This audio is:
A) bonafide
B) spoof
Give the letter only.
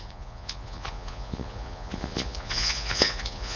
B